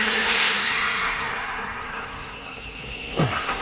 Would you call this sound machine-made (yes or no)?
yes